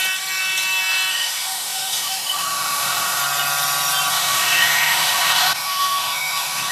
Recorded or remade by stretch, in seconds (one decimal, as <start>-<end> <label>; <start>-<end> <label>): 0.0-1.1 recorded; 1.1-3.2 remade; 3.2-4.1 recorded; 4.1-6.7 remade